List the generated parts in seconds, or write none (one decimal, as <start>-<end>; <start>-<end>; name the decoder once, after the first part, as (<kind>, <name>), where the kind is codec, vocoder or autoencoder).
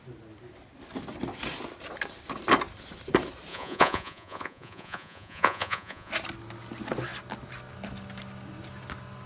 3.5-6.1 (vocoder, Vocos)